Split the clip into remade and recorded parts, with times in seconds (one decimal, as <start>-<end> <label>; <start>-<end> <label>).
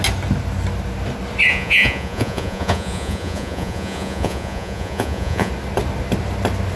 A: 0.0-1.5 recorded; 1.5-5.5 remade; 5.5-6.8 recorded